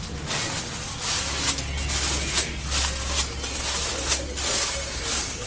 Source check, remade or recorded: recorded